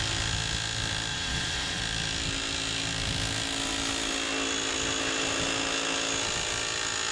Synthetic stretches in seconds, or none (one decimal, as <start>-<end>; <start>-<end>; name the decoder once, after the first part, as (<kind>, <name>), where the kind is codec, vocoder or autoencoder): 1.1-1.8 (vocoder, Vocos)